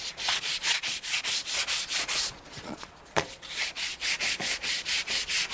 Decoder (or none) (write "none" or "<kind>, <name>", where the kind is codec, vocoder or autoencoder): vocoder, Vocos